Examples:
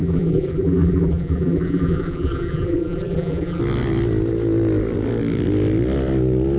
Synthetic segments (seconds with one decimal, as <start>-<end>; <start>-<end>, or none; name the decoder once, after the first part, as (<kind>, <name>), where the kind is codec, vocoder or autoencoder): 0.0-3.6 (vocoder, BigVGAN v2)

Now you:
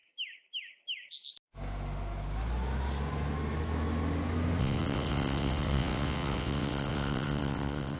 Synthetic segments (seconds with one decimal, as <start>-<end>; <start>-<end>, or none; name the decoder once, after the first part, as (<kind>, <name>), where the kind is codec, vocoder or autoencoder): 4.6-8.0 (vocoder, WaveNeXt)

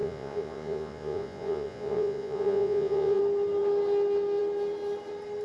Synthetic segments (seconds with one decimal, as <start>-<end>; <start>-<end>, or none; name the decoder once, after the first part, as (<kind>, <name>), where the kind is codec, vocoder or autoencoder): 0.0-3.2 (vocoder, Vocos)

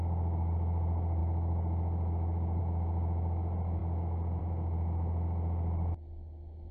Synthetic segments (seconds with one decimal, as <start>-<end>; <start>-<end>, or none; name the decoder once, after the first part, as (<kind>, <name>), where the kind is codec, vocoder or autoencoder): none

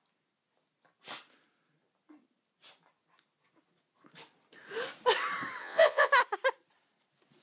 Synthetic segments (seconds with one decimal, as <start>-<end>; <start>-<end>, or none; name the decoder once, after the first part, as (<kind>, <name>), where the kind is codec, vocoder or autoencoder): 5.6-6.1 (vocoder, WaveNeXt)

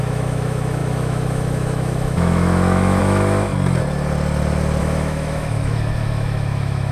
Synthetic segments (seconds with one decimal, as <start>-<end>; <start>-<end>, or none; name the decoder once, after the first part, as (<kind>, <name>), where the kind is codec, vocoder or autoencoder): 0.0-3.5 (autoencoder, DAC-VAE); 4.8-6.9

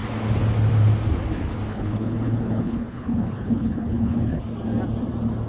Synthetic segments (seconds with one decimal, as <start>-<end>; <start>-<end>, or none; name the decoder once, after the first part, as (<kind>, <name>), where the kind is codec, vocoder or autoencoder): 1.7-4.4 (codec, HILCodec)